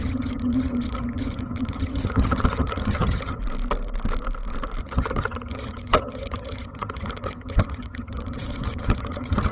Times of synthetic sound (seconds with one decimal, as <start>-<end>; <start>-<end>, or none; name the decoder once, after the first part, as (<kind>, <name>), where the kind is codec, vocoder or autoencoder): 0.0-3.4 (vocoder, HiFi-GAN); 4.8-9.5